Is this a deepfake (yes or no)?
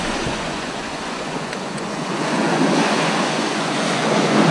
yes